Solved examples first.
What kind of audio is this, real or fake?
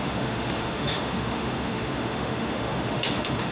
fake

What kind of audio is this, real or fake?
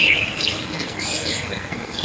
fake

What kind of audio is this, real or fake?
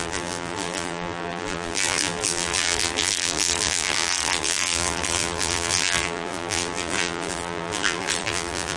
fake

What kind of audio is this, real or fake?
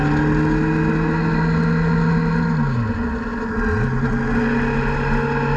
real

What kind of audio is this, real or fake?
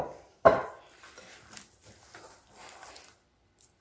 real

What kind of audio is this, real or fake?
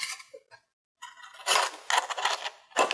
real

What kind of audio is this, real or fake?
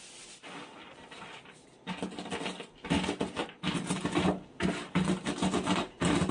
real